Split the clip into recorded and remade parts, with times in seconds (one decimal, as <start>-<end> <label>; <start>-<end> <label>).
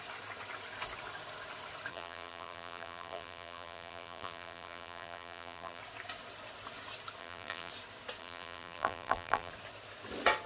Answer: 0.0-1.9 recorded; 1.9-5.8 remade; 5.8-7.2 recorded; 7.2-7.7 remade; 7.7-8.2 recorded; 8.2-9.5 remade; 9.5-10.5 recorded